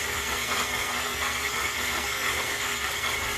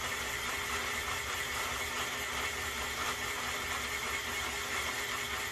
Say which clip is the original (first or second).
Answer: second